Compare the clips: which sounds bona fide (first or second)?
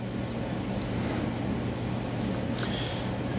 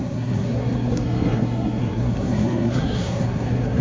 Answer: first